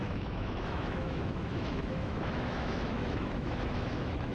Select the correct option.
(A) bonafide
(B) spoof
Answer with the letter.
B